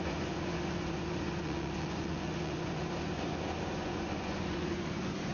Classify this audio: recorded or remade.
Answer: remade